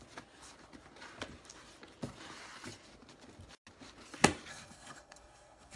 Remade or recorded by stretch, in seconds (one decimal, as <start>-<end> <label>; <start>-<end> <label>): 0.0-4.5 recorded; 4.5-5.8 remade